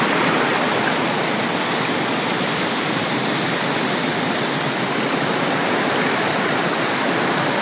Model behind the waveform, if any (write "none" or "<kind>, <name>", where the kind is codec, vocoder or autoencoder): none